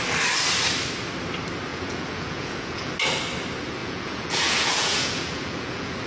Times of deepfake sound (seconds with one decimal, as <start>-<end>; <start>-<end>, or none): 1.7-2.9; 3.8-6.1